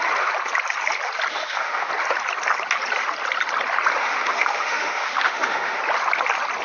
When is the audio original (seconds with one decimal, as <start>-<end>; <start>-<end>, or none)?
0.0-1.3; 1.9-4.0; 5.8-6.6